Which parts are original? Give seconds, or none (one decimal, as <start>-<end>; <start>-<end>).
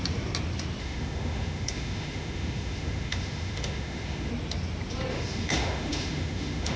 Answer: 0.0-0.8; 4.3-5.1